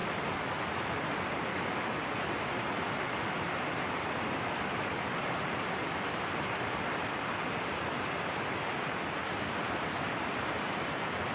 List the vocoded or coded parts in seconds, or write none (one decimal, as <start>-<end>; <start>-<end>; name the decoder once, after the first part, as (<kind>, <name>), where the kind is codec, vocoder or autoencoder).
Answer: 0.8-11.3 (vocoder, BigVGAN v2)